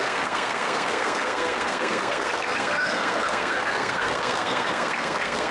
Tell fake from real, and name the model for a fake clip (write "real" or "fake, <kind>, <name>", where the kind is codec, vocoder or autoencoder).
fake, codec, SNAC